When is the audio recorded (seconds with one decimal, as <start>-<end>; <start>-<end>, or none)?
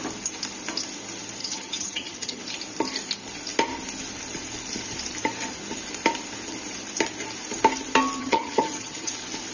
0.0-1.4; 2.4-8.2; 9.1-9.5